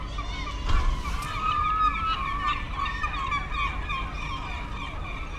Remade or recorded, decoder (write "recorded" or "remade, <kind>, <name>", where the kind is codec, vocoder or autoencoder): recorded